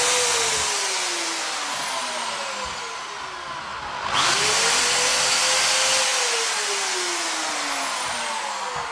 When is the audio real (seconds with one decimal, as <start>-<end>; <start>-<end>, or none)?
0.0-8.9